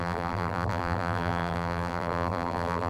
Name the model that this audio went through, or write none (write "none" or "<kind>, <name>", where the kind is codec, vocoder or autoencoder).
vocoder, BigVGAN v2